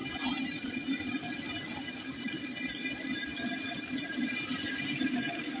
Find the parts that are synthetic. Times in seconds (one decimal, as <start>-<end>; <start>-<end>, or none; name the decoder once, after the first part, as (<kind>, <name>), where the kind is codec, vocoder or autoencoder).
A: none

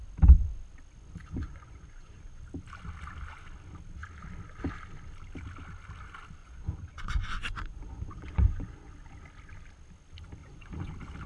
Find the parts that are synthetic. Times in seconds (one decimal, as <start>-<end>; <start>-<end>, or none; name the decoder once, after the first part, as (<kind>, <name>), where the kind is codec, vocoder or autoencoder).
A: 1.2-2.4 (vocoder, Vocos); 6.4-8.9; 10.4-10.9

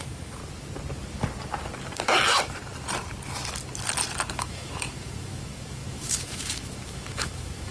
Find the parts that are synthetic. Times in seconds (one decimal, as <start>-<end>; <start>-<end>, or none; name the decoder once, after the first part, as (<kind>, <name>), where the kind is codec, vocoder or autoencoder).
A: 0.0-0.4 (autoencoder, DAC-VAE); 4.3-7.7

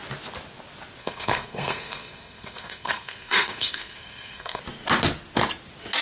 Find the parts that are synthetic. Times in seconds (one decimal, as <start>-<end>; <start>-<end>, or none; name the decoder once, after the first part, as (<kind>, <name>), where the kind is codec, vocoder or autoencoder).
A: 1.0-4.6 (codec, SNAC)

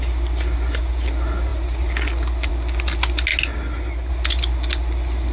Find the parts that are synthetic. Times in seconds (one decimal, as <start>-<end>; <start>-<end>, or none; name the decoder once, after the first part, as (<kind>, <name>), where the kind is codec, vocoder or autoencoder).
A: none